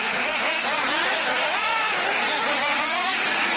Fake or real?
fake